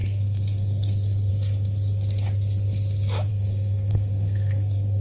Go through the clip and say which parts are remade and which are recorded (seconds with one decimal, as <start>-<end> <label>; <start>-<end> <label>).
0.0-1.3 remade; 1.3-3.3 recorded; 3.3-5.0 remade

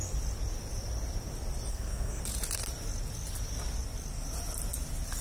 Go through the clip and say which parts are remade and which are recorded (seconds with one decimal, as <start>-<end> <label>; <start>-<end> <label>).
0.0-1.7 recorded; 1.7-2.2 remade; 2.2-5.2 recorded